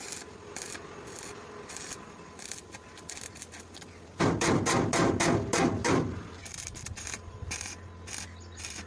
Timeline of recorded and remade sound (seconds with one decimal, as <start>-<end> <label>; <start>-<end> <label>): 0.0-8.9 recorded